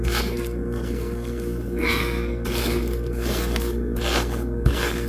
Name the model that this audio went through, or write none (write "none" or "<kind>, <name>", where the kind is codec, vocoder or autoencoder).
codec, SNAC